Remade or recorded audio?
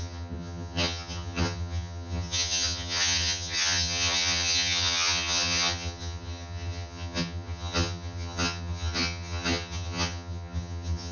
remade